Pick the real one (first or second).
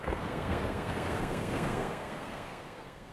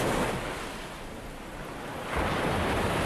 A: second